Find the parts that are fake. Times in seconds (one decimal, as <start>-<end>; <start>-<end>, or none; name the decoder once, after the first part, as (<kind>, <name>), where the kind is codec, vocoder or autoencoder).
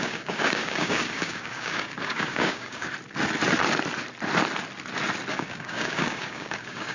0.0-2.9 (codec, DAC); 5.3-6.9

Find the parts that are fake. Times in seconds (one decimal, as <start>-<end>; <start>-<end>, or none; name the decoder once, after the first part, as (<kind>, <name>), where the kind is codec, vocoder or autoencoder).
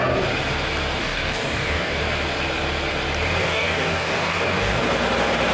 1.0-2.0 (codec, DAC); 3.4-4.8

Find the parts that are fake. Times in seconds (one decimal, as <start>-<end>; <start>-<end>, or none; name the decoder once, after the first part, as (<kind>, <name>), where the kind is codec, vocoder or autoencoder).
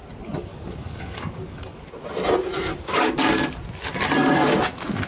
0.5-1.8 (codec, DAC); 2.7-3.5